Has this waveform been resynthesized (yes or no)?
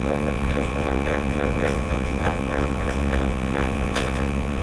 yes